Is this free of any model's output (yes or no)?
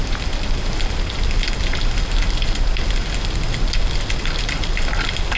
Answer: yes